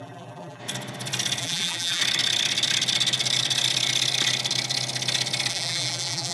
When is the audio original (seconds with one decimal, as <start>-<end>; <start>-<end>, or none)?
0.6-1.4; 2.0-5.5